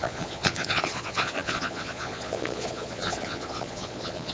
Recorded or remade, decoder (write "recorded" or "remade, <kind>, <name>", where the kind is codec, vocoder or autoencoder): remade, vocoder, Vocos